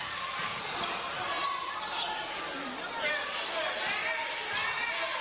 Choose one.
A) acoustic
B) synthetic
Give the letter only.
A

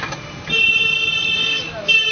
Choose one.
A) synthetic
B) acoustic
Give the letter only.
B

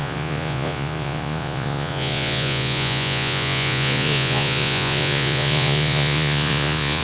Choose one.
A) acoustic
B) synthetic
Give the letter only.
B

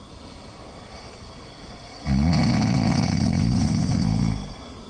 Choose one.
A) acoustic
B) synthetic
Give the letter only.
A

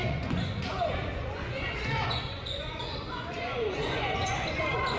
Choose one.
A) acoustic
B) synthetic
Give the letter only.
B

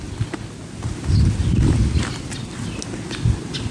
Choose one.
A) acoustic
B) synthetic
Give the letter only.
A